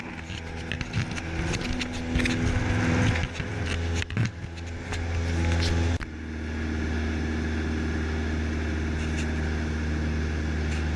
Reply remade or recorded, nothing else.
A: recorded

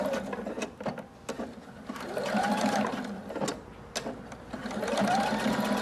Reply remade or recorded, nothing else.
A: recorded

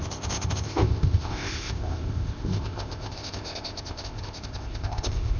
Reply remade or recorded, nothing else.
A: remade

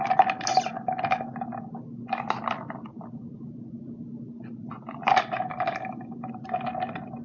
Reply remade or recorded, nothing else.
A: recorded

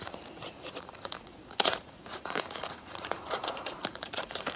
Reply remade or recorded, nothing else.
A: remade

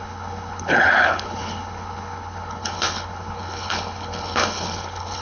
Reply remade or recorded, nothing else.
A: remade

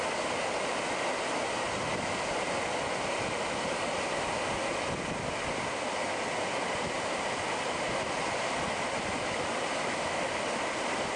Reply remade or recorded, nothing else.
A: recorded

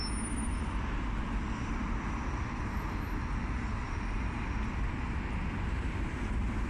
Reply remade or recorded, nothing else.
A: recorded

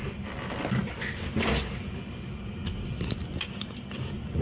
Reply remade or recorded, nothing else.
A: recorded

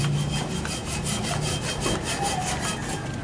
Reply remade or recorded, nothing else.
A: recorded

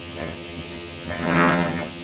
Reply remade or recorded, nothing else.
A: remade